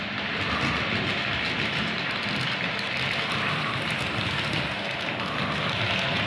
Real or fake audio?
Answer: real